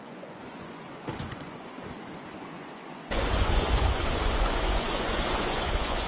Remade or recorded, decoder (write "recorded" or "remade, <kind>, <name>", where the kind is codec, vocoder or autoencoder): remade, vocoder, Vocos